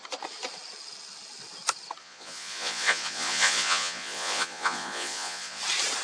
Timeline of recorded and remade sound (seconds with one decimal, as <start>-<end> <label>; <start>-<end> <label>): 0.0-2.0 recorded; 2.0-5.6 remade; 5.6-6.0 recorded